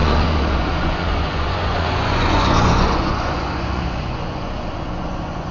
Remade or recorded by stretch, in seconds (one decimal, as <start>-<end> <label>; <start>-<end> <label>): 0.0-5.5 remade